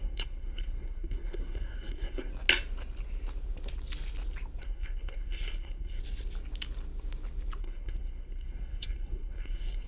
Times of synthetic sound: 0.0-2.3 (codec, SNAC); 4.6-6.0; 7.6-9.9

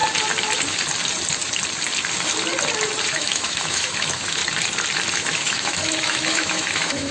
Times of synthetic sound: 3.1-4.4 (autoencoder, DAC-VAE); 5.1-7.1

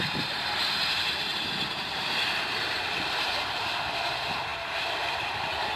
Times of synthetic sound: 0.0-5.8 (vocoder, BigVGAN v2)

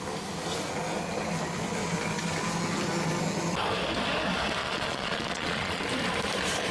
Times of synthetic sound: 4.6-5.8 (vocoder, Vocos)

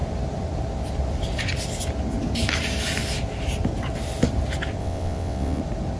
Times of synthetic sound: 4.8-5.6 (vocoder, WaveNeXt)

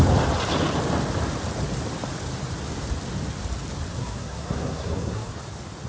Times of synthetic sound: 3.9-5.3 (codec, SNAC)

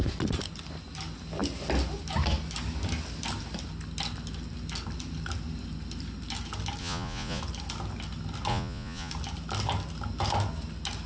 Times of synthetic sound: 6.8-7.4 (vocoder, Vocos); 8.5-9.1

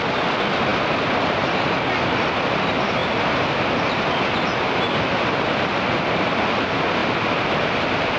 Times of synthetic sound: none